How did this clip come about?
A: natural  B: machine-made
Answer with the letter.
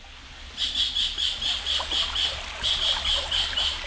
A